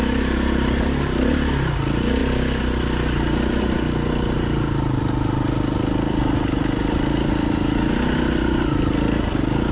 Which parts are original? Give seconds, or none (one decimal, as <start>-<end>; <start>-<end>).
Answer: 0.0-9.7